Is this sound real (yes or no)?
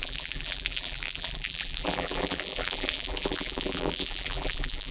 no